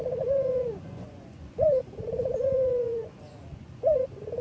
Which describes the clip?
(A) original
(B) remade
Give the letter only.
B